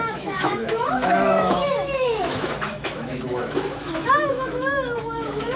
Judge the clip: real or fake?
fake